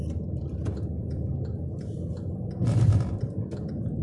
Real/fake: fake